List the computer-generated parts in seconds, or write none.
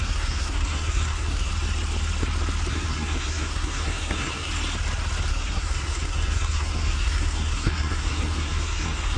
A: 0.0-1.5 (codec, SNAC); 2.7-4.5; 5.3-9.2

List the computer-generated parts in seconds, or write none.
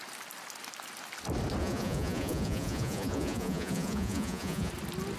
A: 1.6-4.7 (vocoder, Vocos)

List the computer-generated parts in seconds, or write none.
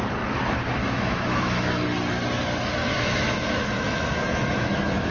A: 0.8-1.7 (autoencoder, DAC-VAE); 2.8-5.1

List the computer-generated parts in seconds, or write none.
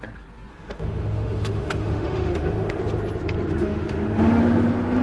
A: 0.5-2.8 (autoencoder, DAC-VAE); 3.5-4.4